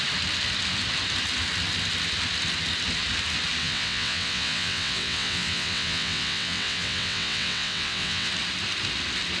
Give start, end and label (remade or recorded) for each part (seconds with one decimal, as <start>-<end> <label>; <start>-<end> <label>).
0.0-3.6 recorded; 3.6-8.3 remade; 8.3-9.4 recorded